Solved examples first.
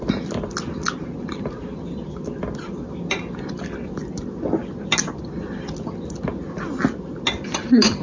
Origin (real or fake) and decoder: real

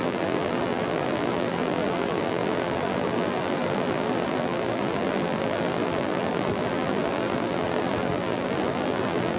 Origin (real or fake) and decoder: fake, vocoder, BigVGAN v2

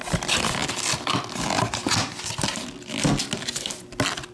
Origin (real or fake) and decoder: real